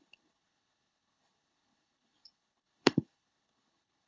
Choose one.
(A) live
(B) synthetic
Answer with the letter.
B